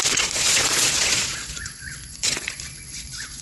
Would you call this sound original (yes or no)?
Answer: no